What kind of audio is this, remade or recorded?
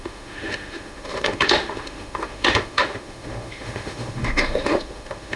remade